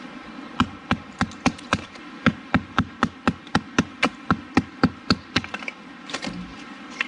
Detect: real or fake real